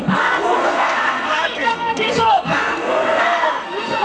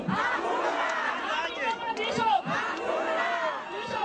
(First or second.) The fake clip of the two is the first